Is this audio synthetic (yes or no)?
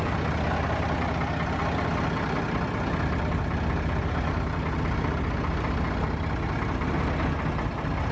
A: no